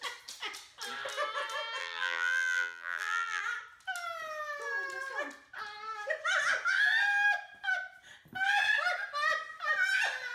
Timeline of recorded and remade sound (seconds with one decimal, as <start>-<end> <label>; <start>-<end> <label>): 0.0-1.8 recorded; 1.8-3.4 remade; 3.4-10.3 recorded